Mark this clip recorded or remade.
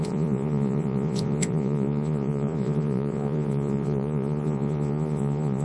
remade